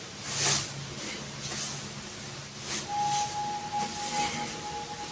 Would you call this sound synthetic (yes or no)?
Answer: no